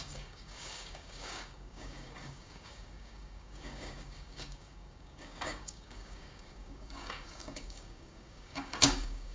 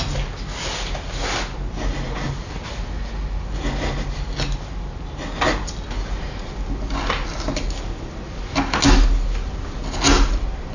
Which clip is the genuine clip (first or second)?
second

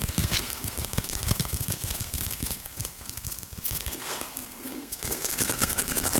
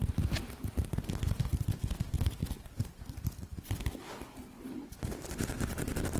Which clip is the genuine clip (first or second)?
second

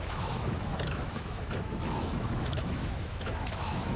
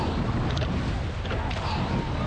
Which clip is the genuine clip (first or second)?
second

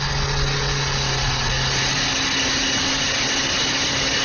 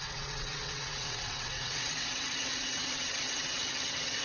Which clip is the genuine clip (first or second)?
first